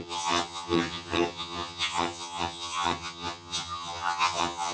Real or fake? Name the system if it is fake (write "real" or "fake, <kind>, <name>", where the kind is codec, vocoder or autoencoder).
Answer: fake, vocoder, HiFi-GAN